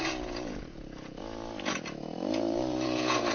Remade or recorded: remade